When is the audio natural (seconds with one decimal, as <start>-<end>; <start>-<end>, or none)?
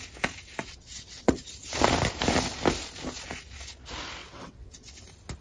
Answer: 0.0-0.6; 1.4-4.2; 4.9-5.4